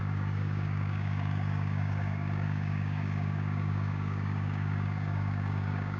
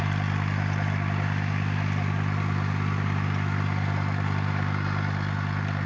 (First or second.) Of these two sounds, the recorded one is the second